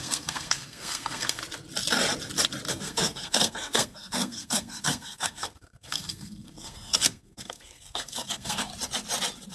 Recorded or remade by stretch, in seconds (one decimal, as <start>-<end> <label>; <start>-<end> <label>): 0.0-1.4 remade; 1.4-2.7 recorded; 2.7-8.7 remade; 8.7-9.5 recorded